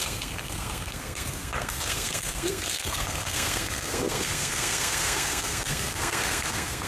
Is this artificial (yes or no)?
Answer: yes